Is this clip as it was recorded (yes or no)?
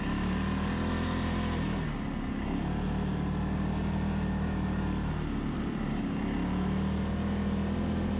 yes